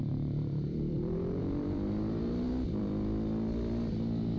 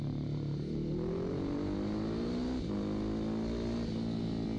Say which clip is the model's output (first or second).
first